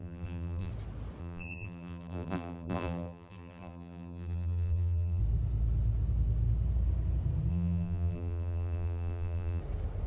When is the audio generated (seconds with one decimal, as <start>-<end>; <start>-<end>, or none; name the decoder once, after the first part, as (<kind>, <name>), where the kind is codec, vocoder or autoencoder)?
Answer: 0.0-0.7 (vocoder, BigVGAN v2); 1.2-5.2; 7.5-9.6